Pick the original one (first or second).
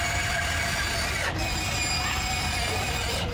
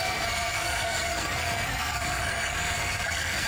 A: first